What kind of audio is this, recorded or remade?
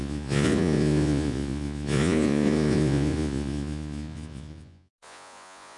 remade